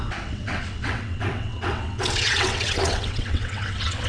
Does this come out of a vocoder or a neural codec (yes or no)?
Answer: yes